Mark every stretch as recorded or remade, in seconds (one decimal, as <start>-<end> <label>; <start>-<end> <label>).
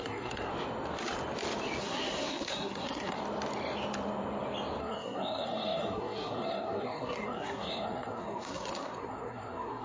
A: 0.0-0.5 remade; 0.5-1.8 recorded; 1.8-3.2 remade; 3.2-4.8 recorded; 4.8-9.8 remade